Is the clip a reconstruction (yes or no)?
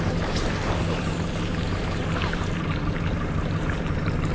yes